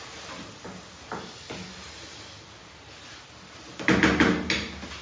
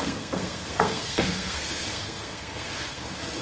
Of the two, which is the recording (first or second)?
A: first